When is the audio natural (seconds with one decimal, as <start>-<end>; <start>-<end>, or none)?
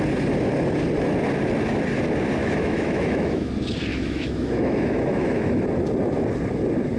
0.0-2.4; 3.5-3.9; 5.6-7.0